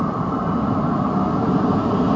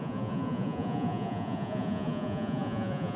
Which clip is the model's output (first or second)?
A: second